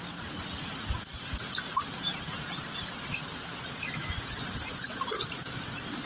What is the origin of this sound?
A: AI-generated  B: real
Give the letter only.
B